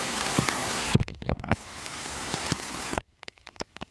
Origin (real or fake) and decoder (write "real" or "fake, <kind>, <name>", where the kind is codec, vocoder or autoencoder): fake, codec, SNAC